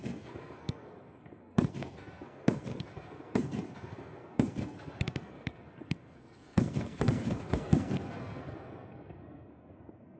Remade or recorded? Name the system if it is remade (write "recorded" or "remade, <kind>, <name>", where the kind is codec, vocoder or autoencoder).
remade, codec, SNAC